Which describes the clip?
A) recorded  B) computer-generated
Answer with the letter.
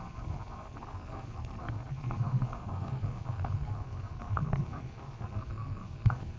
B